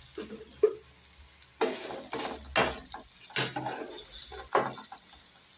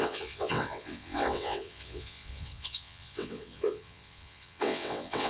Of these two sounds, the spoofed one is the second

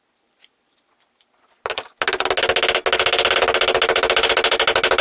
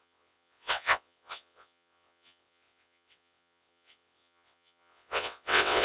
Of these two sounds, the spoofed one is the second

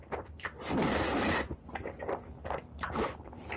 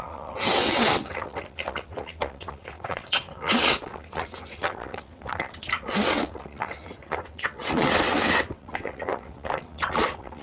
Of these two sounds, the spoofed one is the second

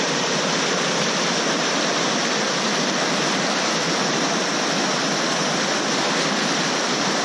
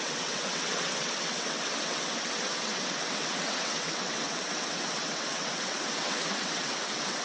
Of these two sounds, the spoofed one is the second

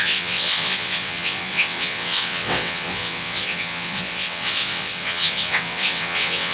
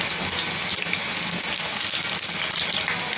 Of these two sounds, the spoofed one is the first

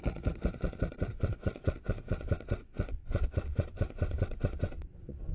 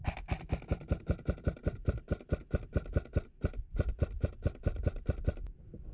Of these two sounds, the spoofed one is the first